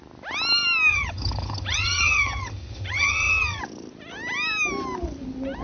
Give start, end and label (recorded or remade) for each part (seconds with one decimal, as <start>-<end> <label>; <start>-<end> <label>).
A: 0.0-0.9 recorded; 0.9-3.6 remade; 3.6-5.6 recorded